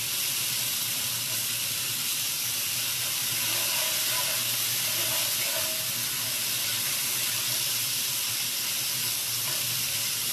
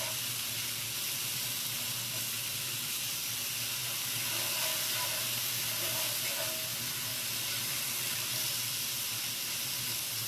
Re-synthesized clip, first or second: first